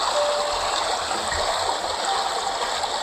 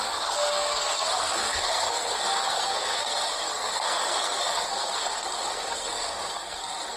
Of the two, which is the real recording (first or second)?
first